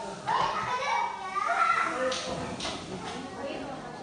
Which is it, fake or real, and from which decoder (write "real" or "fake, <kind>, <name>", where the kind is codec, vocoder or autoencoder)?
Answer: real